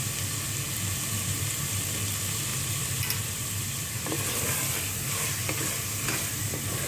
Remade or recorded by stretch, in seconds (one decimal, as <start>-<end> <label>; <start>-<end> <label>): 0.0-2.5 recorded; 2.5-5.1 remade; 5.1-6.9 recorded